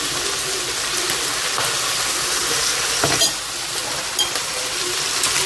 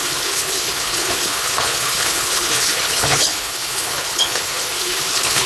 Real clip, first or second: first